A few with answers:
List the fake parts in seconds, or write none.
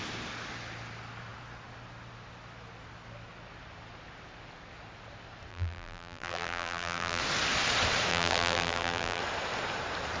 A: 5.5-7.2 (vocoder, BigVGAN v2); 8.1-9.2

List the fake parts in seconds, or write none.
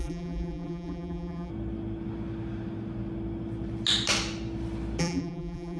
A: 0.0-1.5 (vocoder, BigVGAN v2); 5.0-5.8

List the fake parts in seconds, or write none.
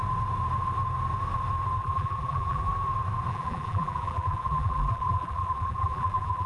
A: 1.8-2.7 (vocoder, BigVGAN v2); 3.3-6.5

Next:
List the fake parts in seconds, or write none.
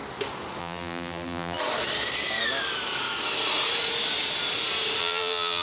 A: 0.6-1.6 (vocoder, BigVGAN v2); 5.0-5.6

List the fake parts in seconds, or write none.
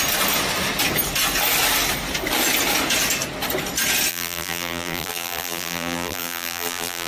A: 4.1-7.1 (vocoder, BigVGAN v2)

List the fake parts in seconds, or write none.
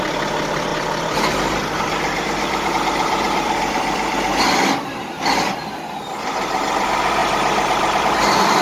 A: 0.0-4.3 (vocoder, BigVGAN v2); 5.0-5.6; 6.2-8.6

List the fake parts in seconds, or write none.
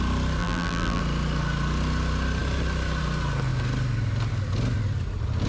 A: 0.4-1.0 (vocoder, BigVGAN v2)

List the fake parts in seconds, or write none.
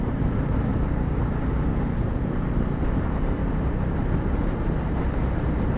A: 0.0-0.7 (vocoder, BigVGAN v2); 2.8-3.4; 4.8-5.8